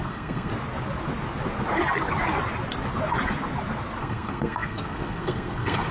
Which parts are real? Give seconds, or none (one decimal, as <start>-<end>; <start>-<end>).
0.5-4.0